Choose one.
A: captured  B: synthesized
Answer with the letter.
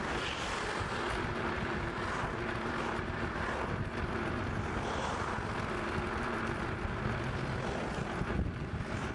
A